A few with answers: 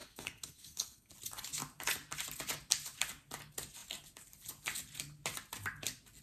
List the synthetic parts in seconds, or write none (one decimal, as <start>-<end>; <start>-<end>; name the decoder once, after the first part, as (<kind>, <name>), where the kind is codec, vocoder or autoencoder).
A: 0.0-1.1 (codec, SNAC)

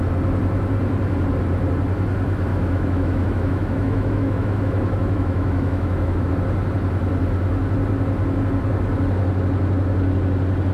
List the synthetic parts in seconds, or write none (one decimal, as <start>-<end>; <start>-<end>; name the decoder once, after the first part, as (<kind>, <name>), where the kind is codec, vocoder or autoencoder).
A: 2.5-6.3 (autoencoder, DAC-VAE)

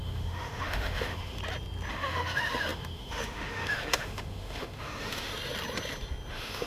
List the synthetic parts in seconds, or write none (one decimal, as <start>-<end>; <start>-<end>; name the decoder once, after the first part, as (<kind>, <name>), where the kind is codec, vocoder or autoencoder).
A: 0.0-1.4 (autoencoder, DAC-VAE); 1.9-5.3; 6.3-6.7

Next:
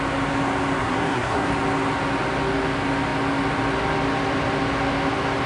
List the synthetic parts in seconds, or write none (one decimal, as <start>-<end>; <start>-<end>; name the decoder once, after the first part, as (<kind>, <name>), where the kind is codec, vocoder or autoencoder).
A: 0.8-1.5 (codec, SNAC)

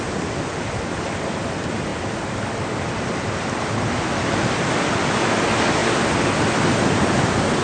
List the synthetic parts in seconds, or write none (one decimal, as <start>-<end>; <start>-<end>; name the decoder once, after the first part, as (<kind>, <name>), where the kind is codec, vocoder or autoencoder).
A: none

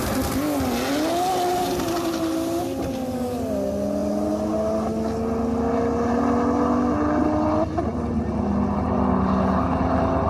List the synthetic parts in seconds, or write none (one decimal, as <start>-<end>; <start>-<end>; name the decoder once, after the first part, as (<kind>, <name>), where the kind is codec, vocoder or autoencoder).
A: none

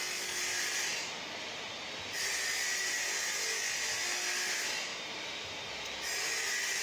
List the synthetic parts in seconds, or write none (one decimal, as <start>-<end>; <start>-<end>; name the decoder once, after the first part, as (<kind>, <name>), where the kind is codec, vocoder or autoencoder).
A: none

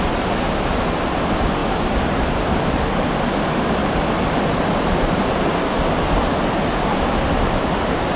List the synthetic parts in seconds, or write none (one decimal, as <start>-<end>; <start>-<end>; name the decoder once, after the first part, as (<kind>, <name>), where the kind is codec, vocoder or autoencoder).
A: none